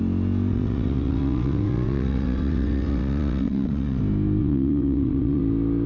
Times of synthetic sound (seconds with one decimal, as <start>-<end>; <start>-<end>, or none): 0.5-4.0; 4.4-5.4